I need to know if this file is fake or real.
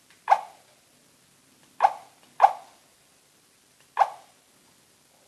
real